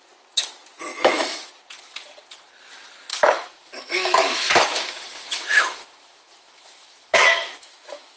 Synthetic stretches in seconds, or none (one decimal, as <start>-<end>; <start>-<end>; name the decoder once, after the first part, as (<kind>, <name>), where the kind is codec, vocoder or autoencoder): 0.9-1.5 (autoencoder, DAC-VAE); 3.1-8.2